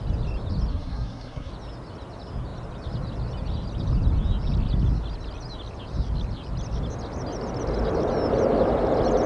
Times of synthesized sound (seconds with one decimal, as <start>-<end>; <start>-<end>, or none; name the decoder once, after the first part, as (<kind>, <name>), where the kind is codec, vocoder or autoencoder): 0.7-1.5 (codec, SNAC)